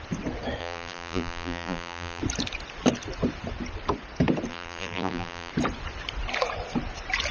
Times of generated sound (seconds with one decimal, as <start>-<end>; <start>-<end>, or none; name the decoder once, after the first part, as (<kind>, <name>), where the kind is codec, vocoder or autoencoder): 0.6-2.2 (vocoder, BigVGAN v2); 4.5-5.5